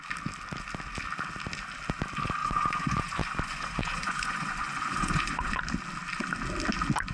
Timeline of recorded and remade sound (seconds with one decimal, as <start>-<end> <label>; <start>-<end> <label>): 0.0-2.4 recorded; 2.4-5.6 remade; 5.6-7.1 recorded